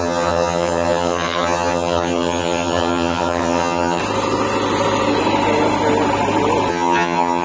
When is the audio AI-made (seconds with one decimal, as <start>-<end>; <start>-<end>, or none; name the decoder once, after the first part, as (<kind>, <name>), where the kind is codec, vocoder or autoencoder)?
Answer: 0.0-4.0 (vocoder, HiFi-GAN); 6.7-7.4